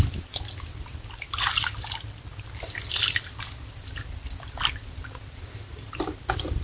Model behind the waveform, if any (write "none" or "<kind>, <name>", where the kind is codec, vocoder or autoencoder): none